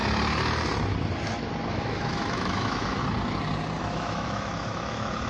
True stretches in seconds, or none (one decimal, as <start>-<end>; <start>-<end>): 0.0-1.7; 3.0-3.8